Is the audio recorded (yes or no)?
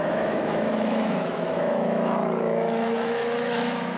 no